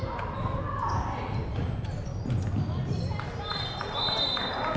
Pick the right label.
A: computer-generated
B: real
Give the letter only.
B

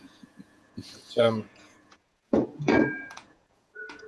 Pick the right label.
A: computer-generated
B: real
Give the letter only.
A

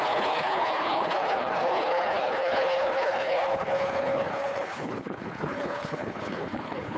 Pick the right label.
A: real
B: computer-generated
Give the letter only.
B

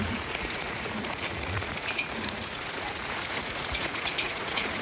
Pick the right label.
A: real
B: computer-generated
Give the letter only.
B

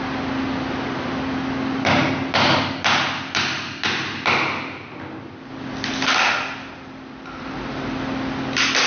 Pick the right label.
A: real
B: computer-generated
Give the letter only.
A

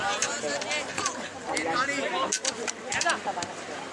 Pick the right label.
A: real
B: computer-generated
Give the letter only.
A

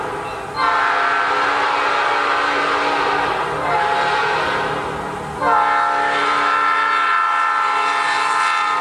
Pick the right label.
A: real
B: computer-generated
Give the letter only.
A